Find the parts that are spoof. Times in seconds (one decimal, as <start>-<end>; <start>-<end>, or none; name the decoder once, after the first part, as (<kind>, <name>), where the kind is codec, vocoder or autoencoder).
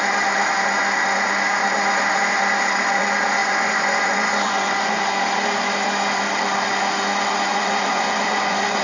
3.4-5.0 (vocoder, Vocos); 7.5-8.8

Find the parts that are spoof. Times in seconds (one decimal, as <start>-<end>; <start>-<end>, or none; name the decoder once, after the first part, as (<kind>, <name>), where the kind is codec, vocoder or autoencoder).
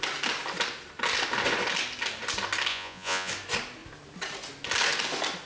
2.7-3.3 (vocoder, Vocos)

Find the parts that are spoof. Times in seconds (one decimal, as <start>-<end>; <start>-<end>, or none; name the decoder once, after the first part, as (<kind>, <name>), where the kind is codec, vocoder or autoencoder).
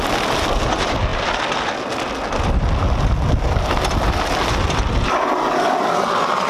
none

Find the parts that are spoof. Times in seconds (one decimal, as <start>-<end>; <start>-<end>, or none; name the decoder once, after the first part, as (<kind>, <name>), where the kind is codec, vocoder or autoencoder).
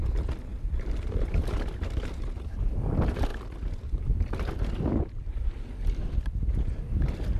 0.5-1.5 (vocoder, BigVGAN v2); 3.3-4.2; 5.3-5.8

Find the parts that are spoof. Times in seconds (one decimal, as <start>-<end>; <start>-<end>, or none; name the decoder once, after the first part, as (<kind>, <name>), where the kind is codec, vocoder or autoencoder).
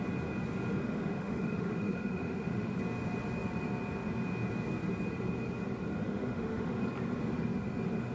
0.8-2.8 (autoencoder, DAC-VAE); 6.0-6.8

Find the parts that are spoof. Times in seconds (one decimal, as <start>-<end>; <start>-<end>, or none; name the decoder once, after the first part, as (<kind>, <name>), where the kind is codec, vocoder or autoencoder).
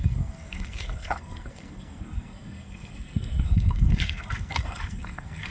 0.0-5.5 (codec, SNAC)